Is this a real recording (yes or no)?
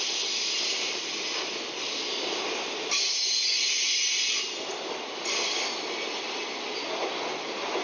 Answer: yes